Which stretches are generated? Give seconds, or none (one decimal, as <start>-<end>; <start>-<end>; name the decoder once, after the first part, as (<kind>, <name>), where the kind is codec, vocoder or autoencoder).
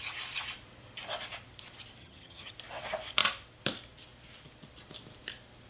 2.0-2.5 (vocoder, HiFi-GAN)